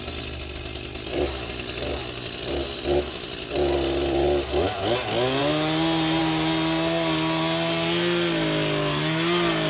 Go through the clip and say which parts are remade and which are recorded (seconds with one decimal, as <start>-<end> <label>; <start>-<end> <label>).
0.0-9.7 recorded